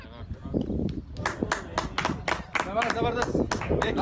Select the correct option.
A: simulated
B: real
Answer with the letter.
B